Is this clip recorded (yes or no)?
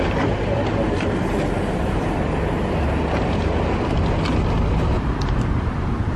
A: yes